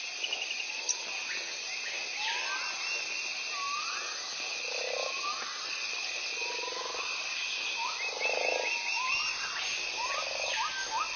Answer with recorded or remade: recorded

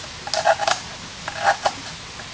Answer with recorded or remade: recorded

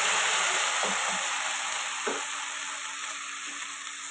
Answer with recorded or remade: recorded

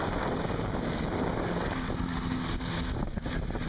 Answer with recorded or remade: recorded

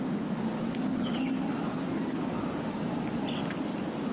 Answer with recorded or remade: recorded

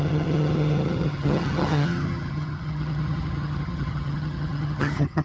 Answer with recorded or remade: remade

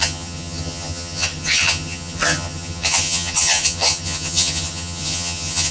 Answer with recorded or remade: remade